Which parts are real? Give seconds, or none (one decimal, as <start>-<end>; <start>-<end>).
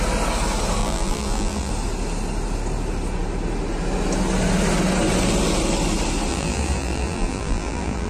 0.0-0.8; 1.7-6.3